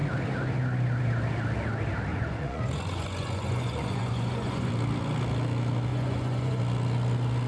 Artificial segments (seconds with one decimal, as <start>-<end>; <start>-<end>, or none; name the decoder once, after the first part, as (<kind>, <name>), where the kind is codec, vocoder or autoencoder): 2.1-4.7 (vocoder, Vocos); 5.9-6.6